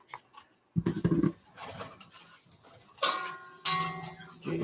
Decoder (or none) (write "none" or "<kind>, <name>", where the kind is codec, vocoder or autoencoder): none